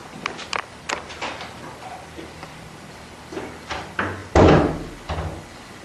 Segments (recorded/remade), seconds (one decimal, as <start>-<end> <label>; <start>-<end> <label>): 0.0-5.8 recorded